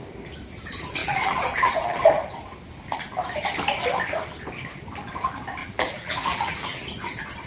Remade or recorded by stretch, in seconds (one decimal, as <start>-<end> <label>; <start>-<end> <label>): 0.0-1.0 recorded; 1.0-2.0 remade; 2.0-5.6 recorded; 5.6-6.8 remade; 6.8-7.5 recorded